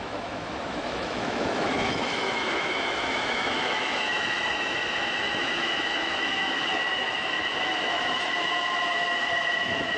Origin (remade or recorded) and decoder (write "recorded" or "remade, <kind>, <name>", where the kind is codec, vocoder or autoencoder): remade, autoencoder, DAC-VAE